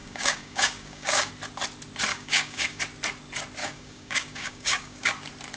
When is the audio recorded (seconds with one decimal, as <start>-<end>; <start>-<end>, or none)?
1.3-2.1; 2.8-3.6; 5.1-5.6